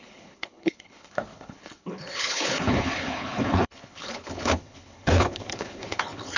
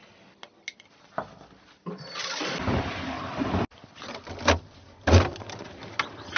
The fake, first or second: first